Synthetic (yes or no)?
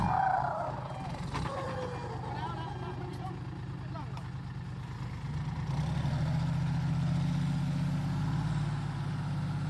no